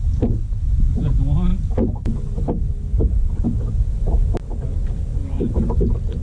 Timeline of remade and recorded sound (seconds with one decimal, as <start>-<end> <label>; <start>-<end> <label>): 0.0-6.2 recorded